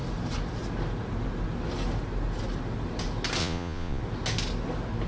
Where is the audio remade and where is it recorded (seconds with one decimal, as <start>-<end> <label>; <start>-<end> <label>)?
0.0-3.4 recorded; 3.4-4.0 remade; 4.0-5.1 recorded